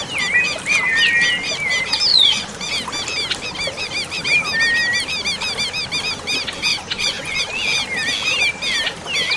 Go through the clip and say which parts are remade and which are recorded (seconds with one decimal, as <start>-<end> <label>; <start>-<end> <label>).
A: 0.0-2.1 recorded; 2.1-2.7 remade; 2.7-6.7 recorded; 6.7-7.4 remade; 7.4-9.4 recorded

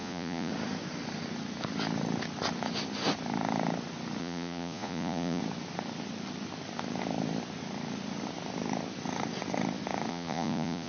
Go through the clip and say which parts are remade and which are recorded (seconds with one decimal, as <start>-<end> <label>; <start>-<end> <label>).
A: 0.0-0.5 remade; 0.5-4.2 recorded; 4.2-5.4 remade; 5.4-10.1 recorded; 10.1-10.9 remade